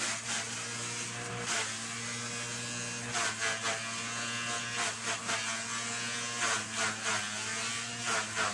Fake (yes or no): no